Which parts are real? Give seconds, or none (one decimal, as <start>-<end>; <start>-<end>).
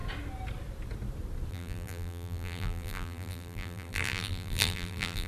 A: 0.0-1.5